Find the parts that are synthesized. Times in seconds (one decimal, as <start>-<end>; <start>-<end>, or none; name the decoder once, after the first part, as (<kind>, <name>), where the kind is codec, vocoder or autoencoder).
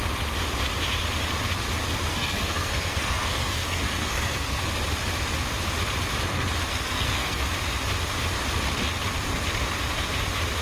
2.1-4.6 (codec, SNAC); 6.7-7.4